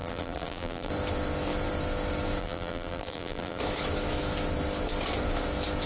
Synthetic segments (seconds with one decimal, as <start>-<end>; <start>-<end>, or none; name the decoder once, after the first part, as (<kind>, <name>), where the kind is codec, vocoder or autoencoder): 0.0-0.9 (vocoder, BigVGAN v2); 2.4-3.6